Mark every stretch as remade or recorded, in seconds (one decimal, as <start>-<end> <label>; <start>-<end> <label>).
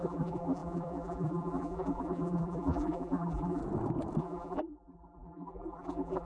0.0-3.6 remade; 3.6-4.2 recorded; 4.2-6.3 remade